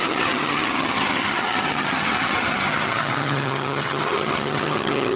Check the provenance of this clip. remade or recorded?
remade